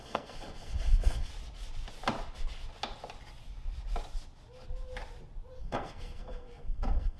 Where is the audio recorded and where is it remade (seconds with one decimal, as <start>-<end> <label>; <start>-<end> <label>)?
0.0-1.3 remade; 1.3-5.6 recorded; 5.6-7.2 remade